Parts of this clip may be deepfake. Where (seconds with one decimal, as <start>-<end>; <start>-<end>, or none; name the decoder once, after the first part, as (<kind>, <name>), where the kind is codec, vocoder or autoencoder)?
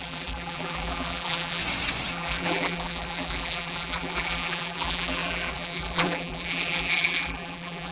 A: 0.0-1.6 (vocoder, BigVGAN v2); 2.1-7.9